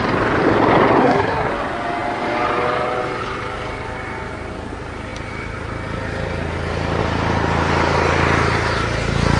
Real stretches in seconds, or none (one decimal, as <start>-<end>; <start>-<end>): 0.0-1.0; 1.5-9.4